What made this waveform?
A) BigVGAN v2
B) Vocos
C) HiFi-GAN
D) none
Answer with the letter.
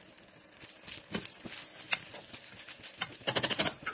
D